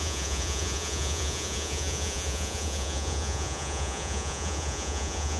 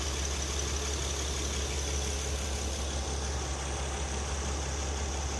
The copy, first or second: first